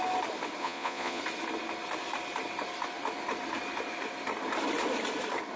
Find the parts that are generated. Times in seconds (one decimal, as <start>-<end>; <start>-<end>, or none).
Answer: 0.6-1.2